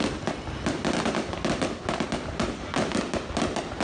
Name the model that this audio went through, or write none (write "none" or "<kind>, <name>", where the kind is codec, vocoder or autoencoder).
none